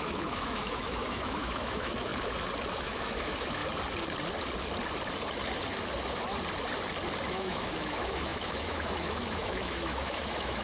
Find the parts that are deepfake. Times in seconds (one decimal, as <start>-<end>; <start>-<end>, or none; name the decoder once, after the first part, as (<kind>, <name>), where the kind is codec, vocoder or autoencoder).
0.0-2.1 (autoencoder, DAC-VAE); 2.7-3.6; 7.3-10.6

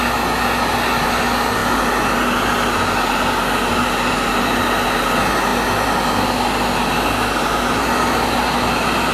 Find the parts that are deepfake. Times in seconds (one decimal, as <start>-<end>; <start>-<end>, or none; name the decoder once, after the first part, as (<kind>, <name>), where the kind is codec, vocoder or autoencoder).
none

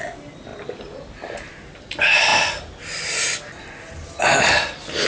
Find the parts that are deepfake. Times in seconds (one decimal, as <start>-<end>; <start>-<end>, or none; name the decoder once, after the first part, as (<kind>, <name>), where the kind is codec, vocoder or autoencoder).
none

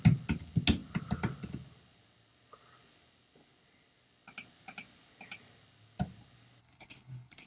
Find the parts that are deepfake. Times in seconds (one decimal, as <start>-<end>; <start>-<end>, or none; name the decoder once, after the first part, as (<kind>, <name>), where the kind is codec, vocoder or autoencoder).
6.6-7.5 (codec, HILCodec)

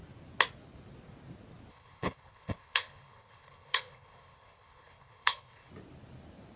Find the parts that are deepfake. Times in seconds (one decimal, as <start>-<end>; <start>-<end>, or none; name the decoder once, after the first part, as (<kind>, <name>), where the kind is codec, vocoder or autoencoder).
1.7-5.7 (codec, HILCodec)